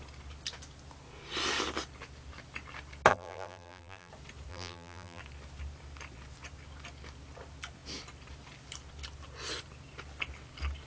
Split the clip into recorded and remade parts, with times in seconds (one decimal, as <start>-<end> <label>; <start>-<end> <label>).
0.0-3.1 recorded; 3.1-4.1 remade; 4.1-4.5 recorded; 4.5-5.2 remade; 5.2-10.9 recorded